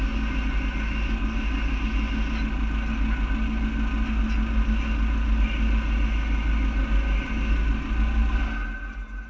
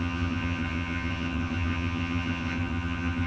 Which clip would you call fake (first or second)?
second